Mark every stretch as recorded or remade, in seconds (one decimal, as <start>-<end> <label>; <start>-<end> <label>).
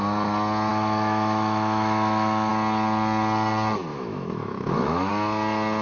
0.0-0.7 recorded; 0.7-2.5 remade; 2.5-3.9 recorded; 3.9-5.1 remade; 5.1-5.8 recorded